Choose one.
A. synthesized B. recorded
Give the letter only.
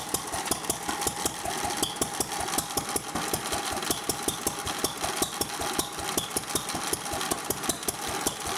B